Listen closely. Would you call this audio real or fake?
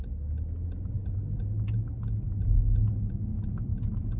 real